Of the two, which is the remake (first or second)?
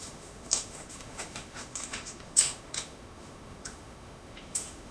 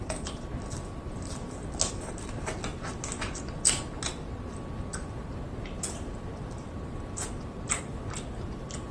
first